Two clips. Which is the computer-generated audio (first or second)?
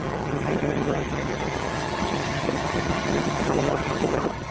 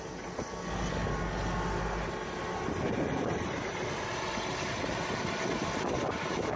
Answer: first